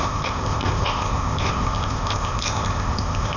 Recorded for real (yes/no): no